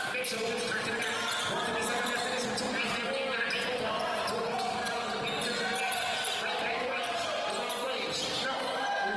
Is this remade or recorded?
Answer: recorded